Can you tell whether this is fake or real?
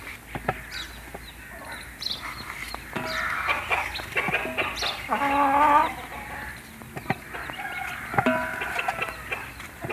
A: real